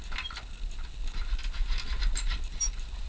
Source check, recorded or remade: recorded